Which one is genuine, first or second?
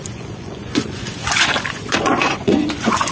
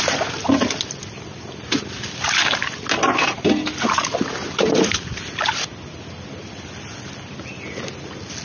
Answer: second